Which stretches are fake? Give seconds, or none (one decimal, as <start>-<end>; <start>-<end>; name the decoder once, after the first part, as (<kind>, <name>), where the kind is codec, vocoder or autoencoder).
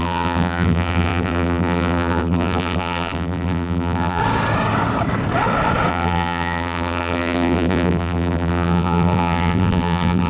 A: 0.0-4.2 (vocoder, BigVGAN v2); 5.9-10.3